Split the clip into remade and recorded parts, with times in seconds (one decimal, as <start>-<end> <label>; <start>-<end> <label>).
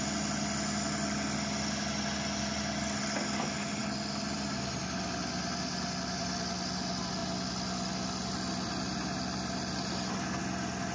0.0-10.9 recorded